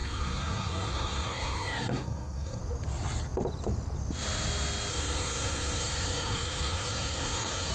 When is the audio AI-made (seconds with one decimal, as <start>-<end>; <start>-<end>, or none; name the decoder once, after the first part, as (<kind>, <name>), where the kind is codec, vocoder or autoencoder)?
0.0-2.6 (codec, SNAC); 4.9-7.7